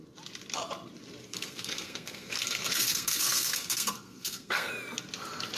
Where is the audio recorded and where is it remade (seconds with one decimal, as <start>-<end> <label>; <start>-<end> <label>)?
0.0-1.3 recorded; 1.3-4.7 remade; 4.7-5.6 recorded